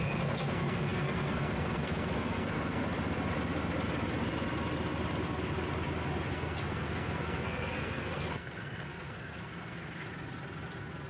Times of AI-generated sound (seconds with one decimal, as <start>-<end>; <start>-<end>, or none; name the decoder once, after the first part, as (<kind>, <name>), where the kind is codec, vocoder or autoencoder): 0.0-2.8 (codec, SNAC); 6.3-10.1